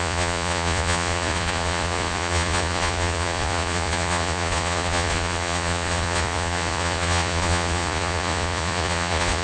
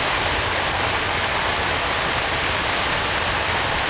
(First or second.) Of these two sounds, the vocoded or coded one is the first